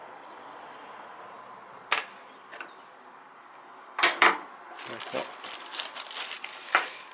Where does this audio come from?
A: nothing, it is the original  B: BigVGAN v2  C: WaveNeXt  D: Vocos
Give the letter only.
B